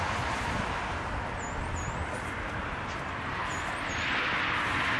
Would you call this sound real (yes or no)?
yes